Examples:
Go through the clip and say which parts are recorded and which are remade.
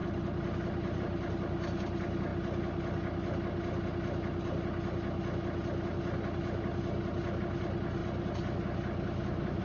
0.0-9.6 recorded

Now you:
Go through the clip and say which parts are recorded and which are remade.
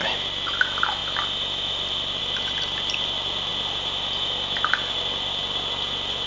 0.0-6.3 recorded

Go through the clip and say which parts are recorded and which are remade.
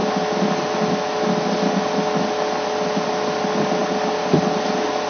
0.0-5.1 recorded